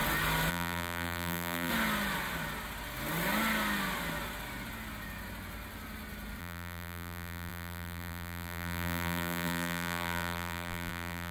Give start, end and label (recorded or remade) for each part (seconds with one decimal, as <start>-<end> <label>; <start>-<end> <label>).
0.0-0.5 recorded; 0.5-1.7 remade; 1.7-6.4 recorded; 6.4-11.3 remade